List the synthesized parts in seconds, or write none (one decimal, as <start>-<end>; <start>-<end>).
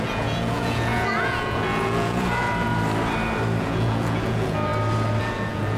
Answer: 0.0-2.7; 3.6-4.7; 5.2-5.8